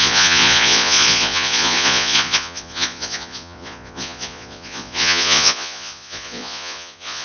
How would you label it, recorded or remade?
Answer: remade